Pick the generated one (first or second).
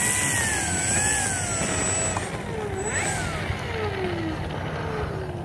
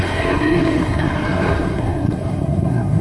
second